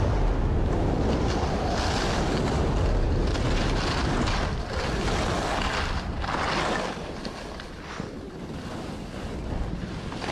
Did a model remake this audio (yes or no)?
no